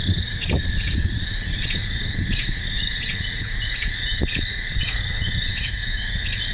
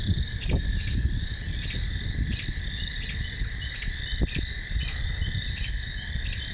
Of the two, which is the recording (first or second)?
second